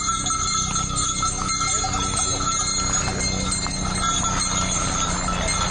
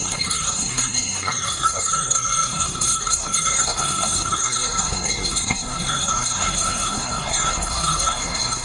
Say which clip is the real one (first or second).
first